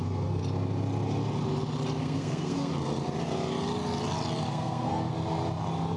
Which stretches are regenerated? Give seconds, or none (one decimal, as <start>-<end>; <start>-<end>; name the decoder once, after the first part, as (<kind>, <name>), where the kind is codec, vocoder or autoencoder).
0.0-0.4 (codec, SNAC); 2.0-2.7; 4.5-5.1